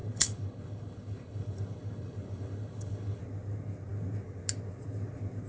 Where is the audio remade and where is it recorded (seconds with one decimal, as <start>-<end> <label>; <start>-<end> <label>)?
0.0-3.2 remade; 3.2-5.5 recorded